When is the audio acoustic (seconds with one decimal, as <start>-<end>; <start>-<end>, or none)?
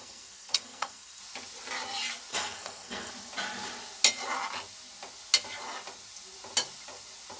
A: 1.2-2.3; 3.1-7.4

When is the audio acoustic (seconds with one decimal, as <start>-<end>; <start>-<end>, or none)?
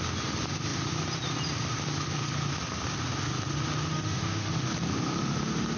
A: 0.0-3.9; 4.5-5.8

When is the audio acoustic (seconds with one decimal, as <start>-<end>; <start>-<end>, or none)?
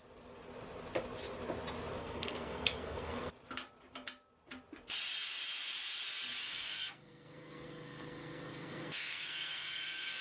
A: 0.0-2.0; 3.3-6.4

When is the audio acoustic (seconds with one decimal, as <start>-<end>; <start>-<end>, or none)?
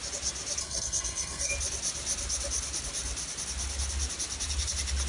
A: 0.0-0.6; 1.5-5.1